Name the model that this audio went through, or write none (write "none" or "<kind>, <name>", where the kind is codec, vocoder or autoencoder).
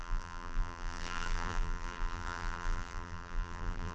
vocoder, BigVGAN v2